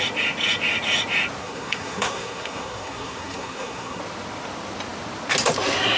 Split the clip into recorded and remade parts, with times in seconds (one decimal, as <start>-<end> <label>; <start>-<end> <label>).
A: 0.0-1.4 recorded; 1.4-4.0 remade; 4.0-6.0 recorded